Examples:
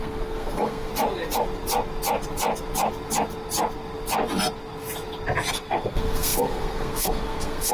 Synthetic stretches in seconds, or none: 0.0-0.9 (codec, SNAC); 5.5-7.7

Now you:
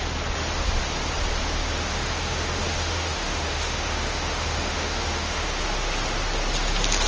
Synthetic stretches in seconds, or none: 1.6-5.6 (autoencoder, DAC-VAE)

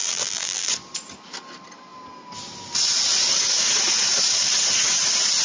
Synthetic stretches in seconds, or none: 0.0-0.7 (vocoder, BigVGAN v2)

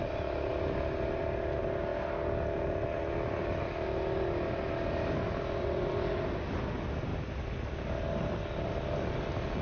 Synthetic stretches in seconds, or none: none

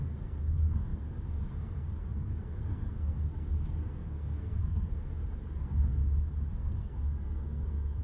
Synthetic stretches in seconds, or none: 0.0-5.1 (codec, SNAC); 5.6-6.0; 6.5-8.0

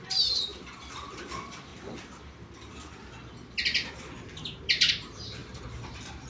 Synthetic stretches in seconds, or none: 0.0-1.7 (vocoder, BigVGAN v2); 4.9-6.3

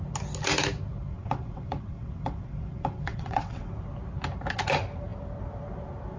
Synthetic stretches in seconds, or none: 1.1-3.7 (vocoder, WaveNeXt)